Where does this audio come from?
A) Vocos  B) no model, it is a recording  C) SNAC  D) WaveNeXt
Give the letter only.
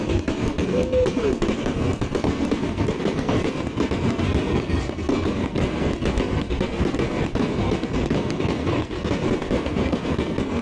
C